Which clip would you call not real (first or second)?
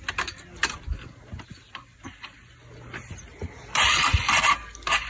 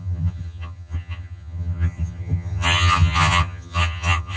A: second